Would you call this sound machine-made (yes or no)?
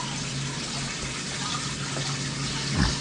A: no